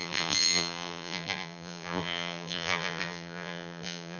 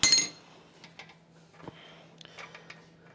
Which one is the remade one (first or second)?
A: first